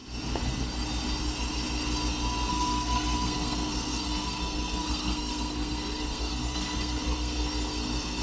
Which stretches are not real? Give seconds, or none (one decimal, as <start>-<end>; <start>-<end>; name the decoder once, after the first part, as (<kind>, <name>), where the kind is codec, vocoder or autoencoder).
2.5-8.2 (codec, SNAC)